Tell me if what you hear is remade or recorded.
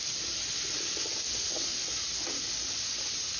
recorded